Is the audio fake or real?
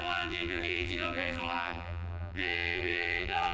fake